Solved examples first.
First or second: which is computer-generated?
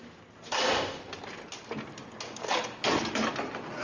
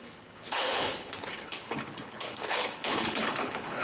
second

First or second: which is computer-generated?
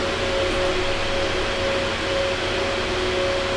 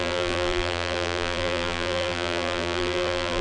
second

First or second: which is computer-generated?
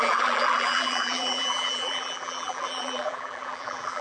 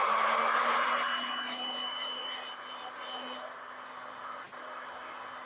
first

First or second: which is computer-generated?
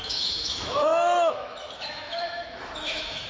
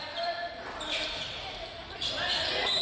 first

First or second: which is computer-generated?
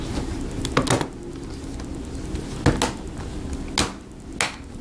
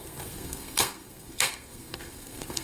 second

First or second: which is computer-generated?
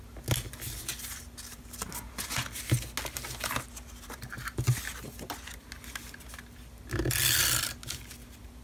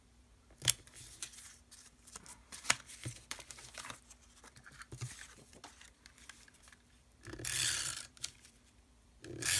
second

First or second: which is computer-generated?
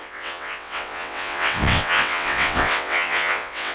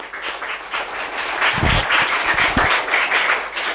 first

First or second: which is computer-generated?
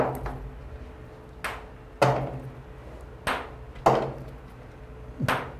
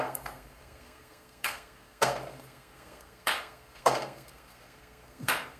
second